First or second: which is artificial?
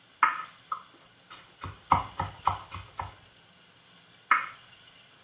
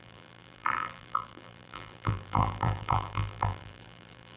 second